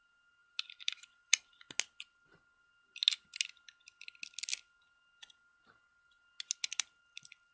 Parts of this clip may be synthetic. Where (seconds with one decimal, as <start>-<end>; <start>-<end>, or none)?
0.4-1.8